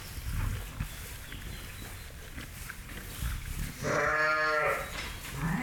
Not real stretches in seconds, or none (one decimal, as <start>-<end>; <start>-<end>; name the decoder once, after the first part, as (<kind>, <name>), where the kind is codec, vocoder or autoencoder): none